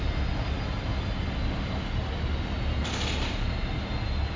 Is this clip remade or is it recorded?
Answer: recorded